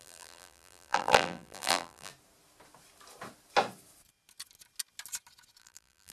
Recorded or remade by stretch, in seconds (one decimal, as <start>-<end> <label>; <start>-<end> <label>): 0.0-2.1 remade; 2.1-5.6 recorded; 5.6-6.1 remade